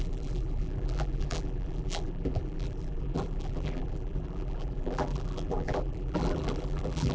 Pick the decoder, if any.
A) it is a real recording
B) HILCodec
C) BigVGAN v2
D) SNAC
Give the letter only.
C